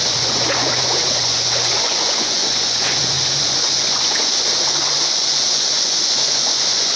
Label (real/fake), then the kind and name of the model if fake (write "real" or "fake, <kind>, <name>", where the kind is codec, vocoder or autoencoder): fake, vocoder, Vocos